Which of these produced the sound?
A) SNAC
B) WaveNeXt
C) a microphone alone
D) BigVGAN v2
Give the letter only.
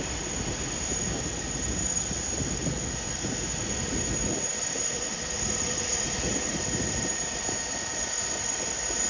C